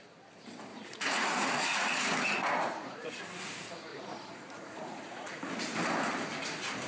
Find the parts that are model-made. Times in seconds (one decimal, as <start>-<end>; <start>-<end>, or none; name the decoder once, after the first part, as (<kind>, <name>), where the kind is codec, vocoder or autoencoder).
0.7-3.2 (vocoder, Vocos); 3.9-5.4